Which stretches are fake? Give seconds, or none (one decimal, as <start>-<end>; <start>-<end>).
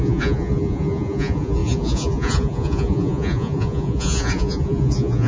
0.0-5.3